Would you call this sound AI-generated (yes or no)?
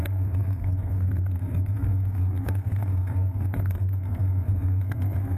yes